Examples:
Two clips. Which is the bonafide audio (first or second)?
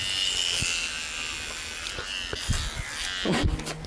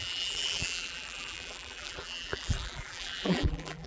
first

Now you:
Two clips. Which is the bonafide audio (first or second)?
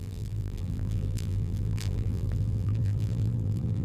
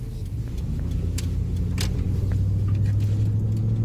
second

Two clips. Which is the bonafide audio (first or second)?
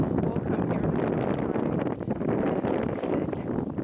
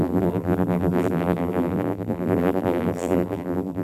first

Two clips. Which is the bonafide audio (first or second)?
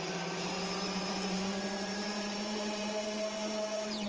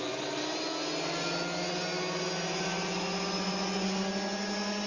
second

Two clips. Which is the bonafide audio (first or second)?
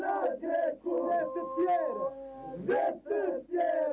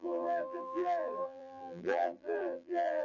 first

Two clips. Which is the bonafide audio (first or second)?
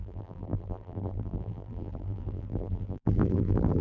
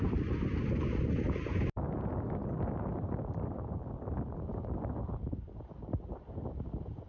second